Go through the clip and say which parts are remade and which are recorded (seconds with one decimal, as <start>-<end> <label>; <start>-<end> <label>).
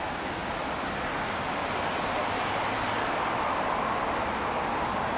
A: 0.0-5.2 recorded